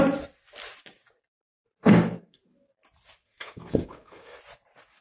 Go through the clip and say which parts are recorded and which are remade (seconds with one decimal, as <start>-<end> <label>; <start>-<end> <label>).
0.0-1.8 recorded; 1.8-2.4 remade; 2.4-3.2 recorded; 3.2-4.4 remade; 4.4-5.0 recorded